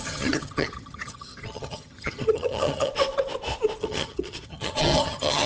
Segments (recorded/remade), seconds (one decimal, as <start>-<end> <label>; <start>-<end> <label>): 0.0-2.9 remade; 2.9-3.8 recorded; 3.8-5.5 remade